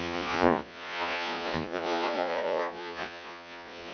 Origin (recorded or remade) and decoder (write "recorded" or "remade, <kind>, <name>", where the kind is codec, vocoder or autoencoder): remade, vocoder, Vocos